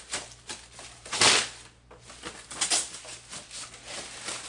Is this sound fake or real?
real